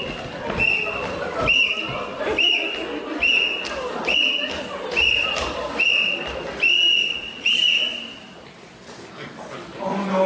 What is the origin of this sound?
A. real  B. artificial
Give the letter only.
A